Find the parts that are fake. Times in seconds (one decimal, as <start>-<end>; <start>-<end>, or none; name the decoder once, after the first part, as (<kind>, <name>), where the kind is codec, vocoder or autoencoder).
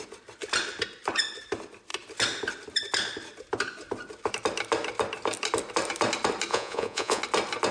6.5-7.2 (vocoder, Vocos)